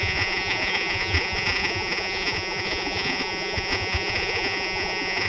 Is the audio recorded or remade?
remade